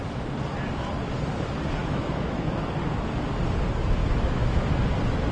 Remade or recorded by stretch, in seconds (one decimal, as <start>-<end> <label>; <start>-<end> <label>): 0.0-1.8 recorded; 1.8-3.4 remade; 3.4-4.0 recorded; 4.0-4.6 remade; 4.6-5.3 recorded